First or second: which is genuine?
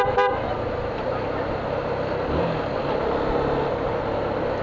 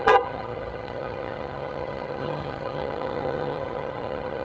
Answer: first